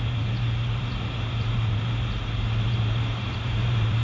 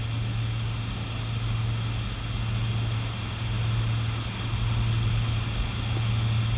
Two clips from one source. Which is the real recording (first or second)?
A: second